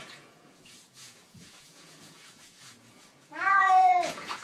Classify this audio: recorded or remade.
remade